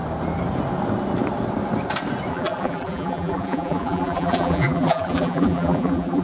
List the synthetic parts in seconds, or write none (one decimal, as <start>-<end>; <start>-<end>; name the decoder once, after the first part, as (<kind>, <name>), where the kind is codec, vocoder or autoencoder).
2.3-6.2 (vocoder, BigVGAN v2)